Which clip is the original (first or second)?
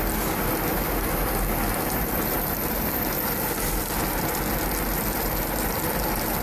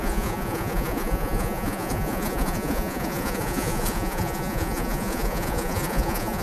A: first